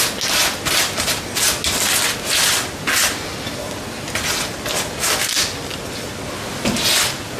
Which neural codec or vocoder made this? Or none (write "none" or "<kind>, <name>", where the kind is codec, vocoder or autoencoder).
none